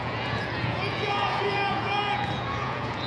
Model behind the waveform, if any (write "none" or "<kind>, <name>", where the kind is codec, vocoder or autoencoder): vocoder, Vocos